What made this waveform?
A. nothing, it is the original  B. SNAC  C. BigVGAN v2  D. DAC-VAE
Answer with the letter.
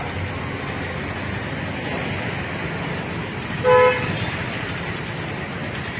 A